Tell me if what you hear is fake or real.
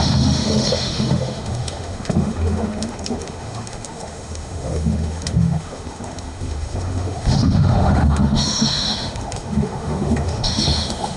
fake